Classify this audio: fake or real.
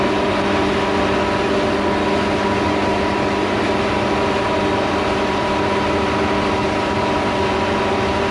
real